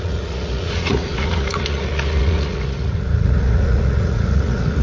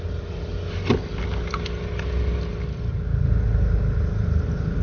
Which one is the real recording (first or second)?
second